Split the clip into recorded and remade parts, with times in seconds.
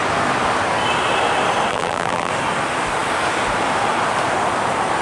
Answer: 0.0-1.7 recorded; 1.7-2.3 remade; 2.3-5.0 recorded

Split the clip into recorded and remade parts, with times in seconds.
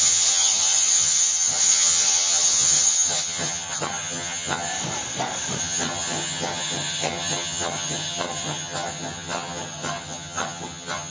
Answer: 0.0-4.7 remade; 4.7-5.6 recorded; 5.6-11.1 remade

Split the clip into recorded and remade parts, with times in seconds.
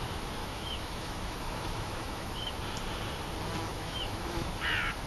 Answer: 0.0-0.4 recorded; 0.4-2.5 remade; 2.5-3.7 recorded; 3.7-4.5 remade; 4.5-5.1 recorded